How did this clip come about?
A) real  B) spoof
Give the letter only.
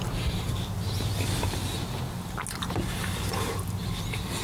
A